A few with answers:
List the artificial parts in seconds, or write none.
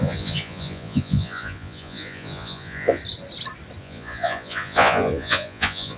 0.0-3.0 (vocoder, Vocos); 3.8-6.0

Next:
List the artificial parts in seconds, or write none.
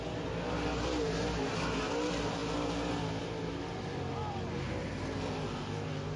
none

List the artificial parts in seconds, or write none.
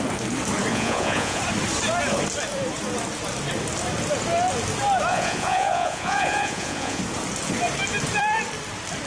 0.7-1.4 (vocoder, Vocos); 5.1-7.0